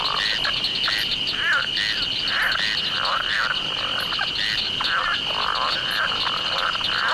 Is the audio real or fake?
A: real